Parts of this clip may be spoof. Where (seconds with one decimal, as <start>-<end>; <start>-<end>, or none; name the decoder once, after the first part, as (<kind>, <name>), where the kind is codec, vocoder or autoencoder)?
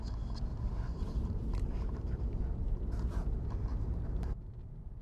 0.5-2.4 (vocoder, BigVGAN v2); 3.7-4.5